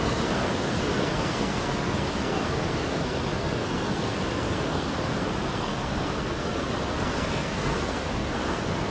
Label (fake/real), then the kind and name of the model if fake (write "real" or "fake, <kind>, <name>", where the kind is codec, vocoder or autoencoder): fake, codec, SNAC